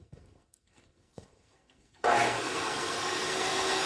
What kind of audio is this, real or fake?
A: fake